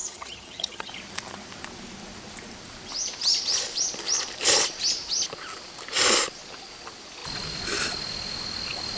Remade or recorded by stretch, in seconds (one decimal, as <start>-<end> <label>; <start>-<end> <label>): 0.0-0.9 remade; 0.9-9.0 recorded